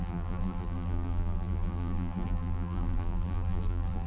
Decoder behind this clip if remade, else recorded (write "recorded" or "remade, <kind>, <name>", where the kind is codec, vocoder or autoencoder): remade, vocoder, BigVGAN v2